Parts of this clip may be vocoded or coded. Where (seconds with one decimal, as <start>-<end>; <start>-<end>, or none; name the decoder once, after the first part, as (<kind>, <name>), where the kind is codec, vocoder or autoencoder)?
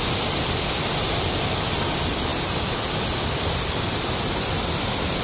none